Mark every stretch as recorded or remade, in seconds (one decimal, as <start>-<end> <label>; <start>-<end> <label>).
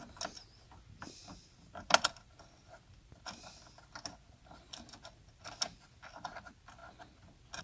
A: 0.0-7.6 recorded